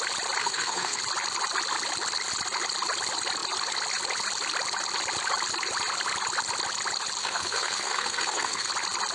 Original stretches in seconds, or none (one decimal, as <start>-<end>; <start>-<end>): 0.0-0.4; 1.0-7.2; 8.7-9.1